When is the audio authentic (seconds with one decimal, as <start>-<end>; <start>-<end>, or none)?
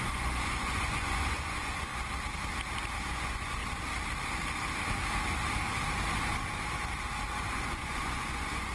1.9-3.0; 3.6-7.3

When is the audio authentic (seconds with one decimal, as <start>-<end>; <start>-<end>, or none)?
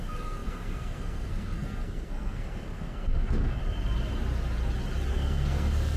3.6-5.1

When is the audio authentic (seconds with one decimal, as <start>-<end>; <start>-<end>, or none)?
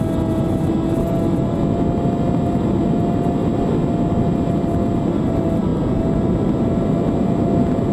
0.0-7.9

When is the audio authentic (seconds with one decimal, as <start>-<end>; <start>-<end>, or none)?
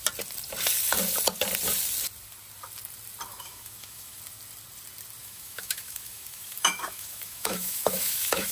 0.0-3.3; 4.2-5.2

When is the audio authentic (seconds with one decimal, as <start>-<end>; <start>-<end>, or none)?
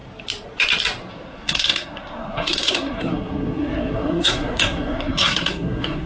0.0-1.1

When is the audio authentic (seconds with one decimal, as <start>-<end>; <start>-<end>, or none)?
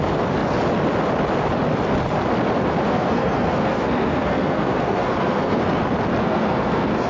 0.0-2.9; 5.7-6.2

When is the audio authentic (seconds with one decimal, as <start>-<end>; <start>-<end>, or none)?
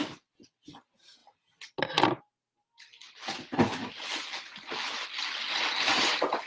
0.0-6.5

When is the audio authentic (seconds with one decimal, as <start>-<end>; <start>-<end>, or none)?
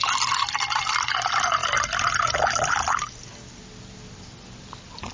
0.0-5.1